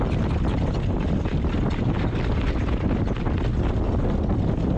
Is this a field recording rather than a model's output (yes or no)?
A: yes